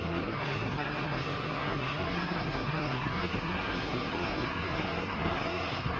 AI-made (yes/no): yes